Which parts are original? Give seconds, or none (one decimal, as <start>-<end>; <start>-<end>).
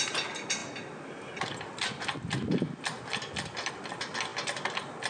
0.0-5.1